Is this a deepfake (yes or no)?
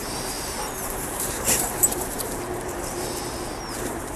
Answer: yes